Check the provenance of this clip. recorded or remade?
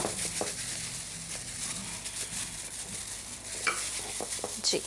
recorded